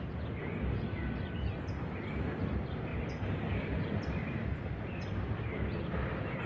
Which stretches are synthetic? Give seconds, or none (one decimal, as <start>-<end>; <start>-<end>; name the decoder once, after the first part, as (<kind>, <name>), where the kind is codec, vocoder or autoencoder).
none